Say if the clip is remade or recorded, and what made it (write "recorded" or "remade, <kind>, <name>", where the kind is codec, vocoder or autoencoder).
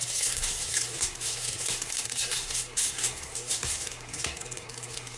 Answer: remade, codec, SNAC